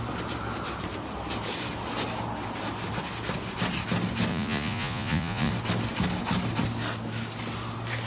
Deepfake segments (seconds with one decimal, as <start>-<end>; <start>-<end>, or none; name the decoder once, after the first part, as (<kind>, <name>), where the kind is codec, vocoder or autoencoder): 4.3-5.5 (vocoder, Vocos)